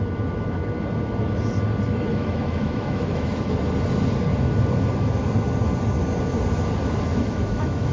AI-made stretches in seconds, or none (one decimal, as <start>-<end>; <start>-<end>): 2.1-3.3; 7.1-7.9